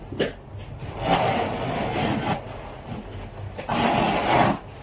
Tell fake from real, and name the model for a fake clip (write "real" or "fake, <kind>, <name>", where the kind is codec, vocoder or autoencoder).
real